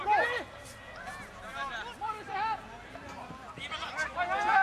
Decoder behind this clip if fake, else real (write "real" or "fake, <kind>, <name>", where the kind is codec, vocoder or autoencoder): real